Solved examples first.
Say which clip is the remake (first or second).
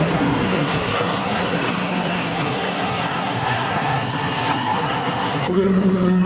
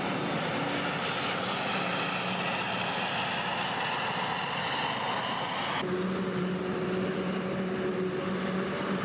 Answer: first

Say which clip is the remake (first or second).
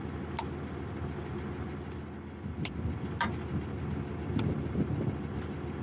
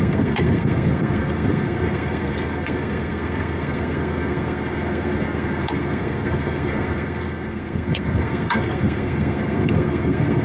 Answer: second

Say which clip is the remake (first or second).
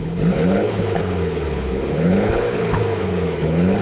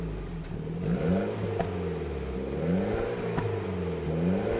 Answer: first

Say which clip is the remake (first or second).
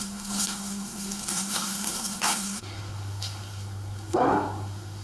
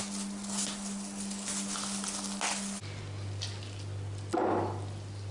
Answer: first